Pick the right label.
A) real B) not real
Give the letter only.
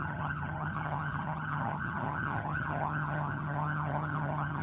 B